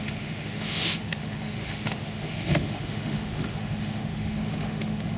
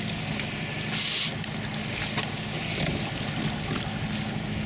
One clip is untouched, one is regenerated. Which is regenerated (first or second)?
first